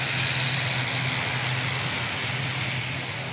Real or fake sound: real